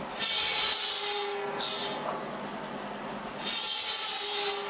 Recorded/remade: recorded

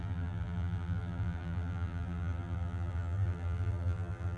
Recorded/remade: remade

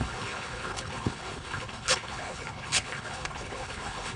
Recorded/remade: remade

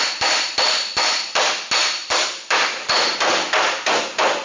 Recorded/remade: recorded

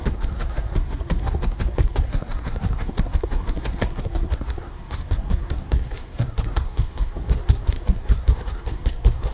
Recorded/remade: remade